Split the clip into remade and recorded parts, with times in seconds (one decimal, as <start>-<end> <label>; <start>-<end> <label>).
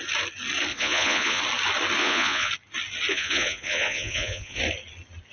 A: 0.0-0.7 recorded; 0.7-1.4 remade; 1.4-2.0 recorded; 2.0-2.5 remade; 2.5-3.1 recorded; 3.1-4.6 remade; 4.6-5.3 recorded